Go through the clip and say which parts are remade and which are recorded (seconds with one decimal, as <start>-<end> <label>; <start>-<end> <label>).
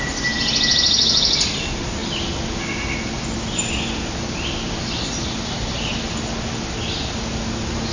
0.0-7.9 recorded